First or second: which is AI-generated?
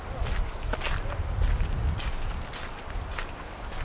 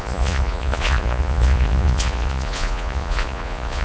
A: second